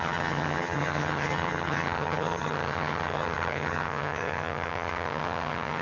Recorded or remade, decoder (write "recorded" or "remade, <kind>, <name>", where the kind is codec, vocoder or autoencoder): remade, vocoder, HiFi-GAN